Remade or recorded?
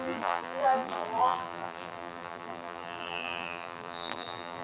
remade